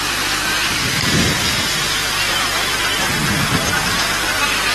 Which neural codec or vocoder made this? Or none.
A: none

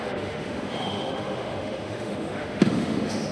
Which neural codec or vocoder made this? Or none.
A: autoencoder, DAC-VAE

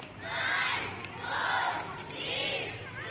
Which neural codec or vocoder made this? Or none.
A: none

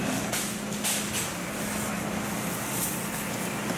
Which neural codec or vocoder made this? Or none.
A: none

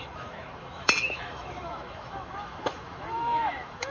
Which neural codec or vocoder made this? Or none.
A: autoencoder, DAC-VAE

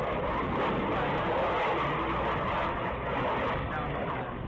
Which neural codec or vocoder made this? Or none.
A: none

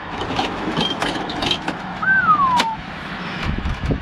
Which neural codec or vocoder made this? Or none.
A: autoencoder, DAC-VAE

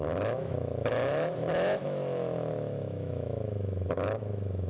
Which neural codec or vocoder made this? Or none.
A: autoencoder, DAC-VAE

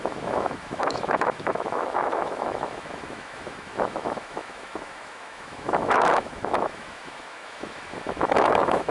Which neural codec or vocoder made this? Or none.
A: autoencoder, DAC-VAE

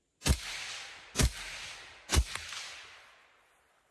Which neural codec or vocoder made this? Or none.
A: none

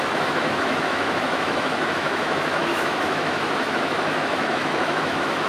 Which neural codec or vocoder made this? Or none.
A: autoencoder, DAC-VAE